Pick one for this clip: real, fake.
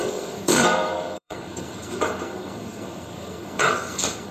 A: fake